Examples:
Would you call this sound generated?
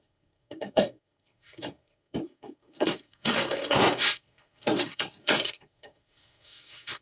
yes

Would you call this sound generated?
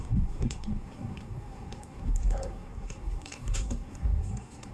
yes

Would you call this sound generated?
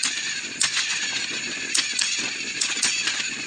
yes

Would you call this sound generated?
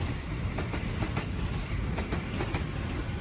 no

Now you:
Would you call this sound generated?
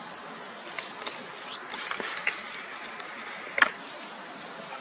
no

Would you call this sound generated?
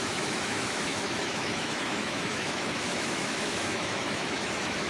yes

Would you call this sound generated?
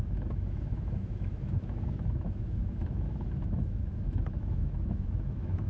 yes